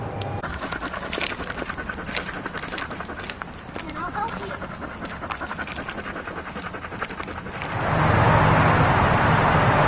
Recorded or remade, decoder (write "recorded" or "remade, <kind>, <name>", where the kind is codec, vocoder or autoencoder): recorded